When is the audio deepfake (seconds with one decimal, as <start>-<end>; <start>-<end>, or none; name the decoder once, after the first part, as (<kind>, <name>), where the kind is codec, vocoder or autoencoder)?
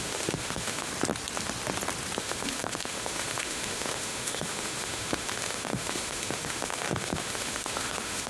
0.0-0.9 (autoencoder, DAC-VAE); 2.2-8.3